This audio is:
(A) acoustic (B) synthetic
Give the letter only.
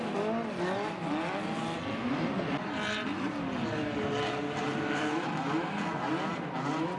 A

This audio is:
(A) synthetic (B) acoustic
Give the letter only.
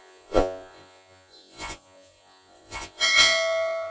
A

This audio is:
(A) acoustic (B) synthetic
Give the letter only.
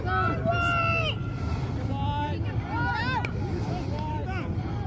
A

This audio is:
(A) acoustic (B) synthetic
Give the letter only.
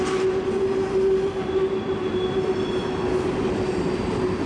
A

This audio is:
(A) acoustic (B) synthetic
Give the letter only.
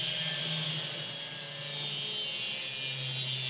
A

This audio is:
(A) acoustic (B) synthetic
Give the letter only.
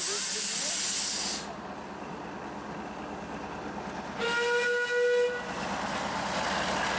A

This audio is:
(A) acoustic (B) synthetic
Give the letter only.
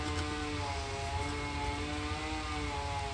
A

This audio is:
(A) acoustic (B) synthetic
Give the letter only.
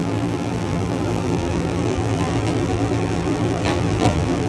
B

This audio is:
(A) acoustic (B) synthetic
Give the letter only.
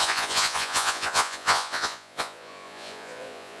B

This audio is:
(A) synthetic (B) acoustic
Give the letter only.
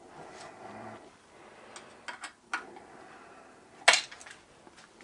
B